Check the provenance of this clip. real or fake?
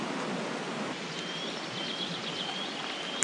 real